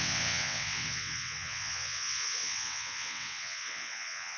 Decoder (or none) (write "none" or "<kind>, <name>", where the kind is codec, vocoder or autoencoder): vocoder, WaveNeXt